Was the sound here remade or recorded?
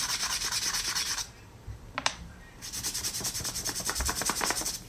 remade